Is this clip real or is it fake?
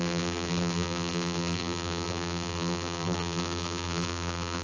fake